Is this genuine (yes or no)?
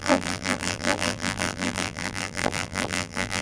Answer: no